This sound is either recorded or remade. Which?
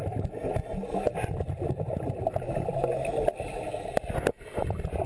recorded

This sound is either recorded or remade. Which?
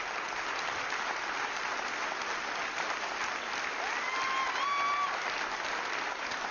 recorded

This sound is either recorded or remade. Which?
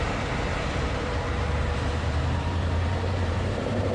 remade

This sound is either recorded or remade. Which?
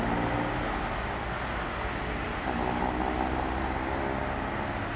recorded